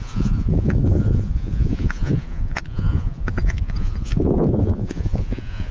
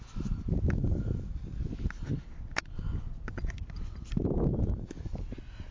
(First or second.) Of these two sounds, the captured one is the second